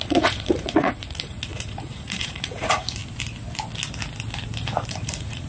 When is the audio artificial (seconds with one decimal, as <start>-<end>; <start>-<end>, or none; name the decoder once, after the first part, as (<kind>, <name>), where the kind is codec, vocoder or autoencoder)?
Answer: 0.0-3.0 (vocoder, Vocos); 4.9-5.5